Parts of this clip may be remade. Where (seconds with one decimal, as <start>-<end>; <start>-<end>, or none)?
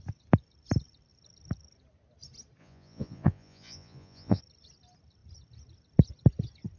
2.6-4.4